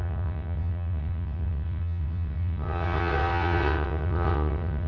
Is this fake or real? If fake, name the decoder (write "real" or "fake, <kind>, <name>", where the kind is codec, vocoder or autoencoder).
fake, vocoder, WaveNeXt